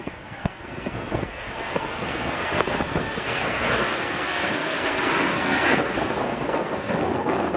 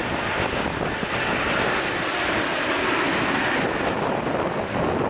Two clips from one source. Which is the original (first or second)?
second